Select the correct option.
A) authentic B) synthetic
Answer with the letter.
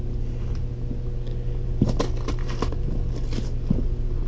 A